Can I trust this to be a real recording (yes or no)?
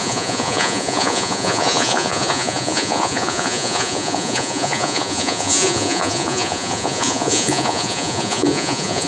no